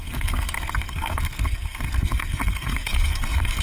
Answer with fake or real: fake